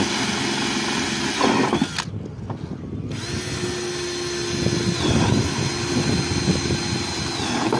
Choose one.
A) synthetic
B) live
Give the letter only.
B